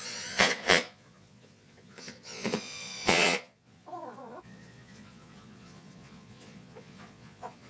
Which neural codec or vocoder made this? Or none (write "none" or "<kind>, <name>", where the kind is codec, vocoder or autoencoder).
vocoder, Vocos